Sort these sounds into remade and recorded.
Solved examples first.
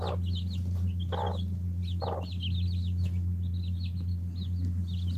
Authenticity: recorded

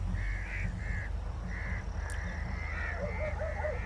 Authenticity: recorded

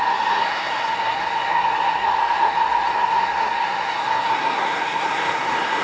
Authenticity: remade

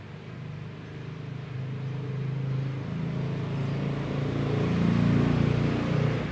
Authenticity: recorded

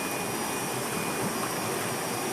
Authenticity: recorded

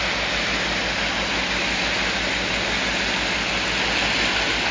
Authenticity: recorded